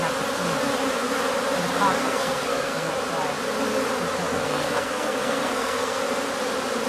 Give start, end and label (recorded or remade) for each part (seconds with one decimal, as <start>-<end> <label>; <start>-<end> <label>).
0.0-2.0 recorded; 2.0-2.9 remade; 2.9-4.3 recorded; 4.3-6.0 remade; 6.0-6.9 recorded